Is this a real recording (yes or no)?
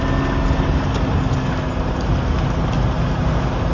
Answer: yes